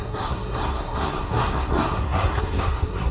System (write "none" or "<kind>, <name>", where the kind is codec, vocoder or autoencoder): codec, SNAC